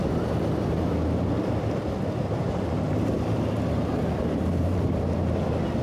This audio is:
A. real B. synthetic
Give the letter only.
B